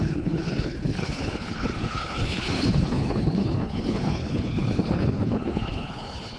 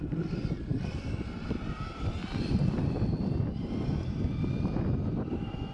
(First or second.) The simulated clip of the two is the first